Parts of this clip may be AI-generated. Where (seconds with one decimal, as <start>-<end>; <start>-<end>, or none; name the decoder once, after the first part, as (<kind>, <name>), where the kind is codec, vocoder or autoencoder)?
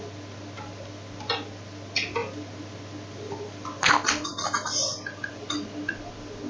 none